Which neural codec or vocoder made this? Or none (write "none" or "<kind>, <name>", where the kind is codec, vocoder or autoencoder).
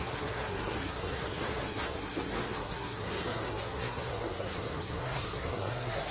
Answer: codec, SNAC